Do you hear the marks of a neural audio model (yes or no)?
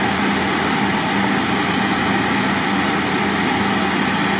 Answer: no